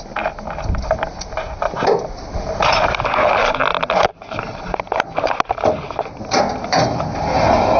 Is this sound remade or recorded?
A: recorded